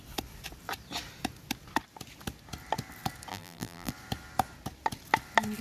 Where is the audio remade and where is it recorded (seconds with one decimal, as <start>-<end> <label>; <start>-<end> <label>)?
0.0-3.3 recorded; 3.3-3.9 remade; 3.9-5.6 recorded

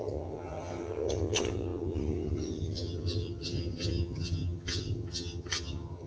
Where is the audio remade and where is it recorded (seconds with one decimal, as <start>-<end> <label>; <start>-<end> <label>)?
0.0-6.1 remade

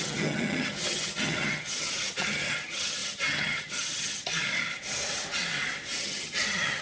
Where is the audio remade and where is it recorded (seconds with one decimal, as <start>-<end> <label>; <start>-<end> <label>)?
0.0-4.3 remade; 4.3-6.0 recorded; 6.0-6.8 remade